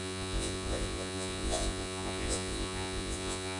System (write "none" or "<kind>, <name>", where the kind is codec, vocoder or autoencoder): vocoder, Vocos